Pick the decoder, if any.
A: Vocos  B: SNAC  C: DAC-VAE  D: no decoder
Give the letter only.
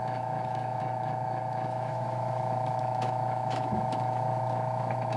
C